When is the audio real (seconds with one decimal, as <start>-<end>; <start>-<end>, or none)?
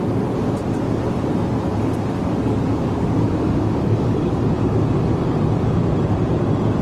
0.0-2.2; 4.3-6.8